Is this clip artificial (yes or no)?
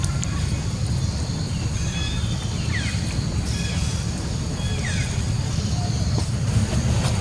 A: no